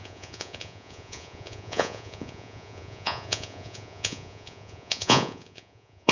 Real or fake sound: fake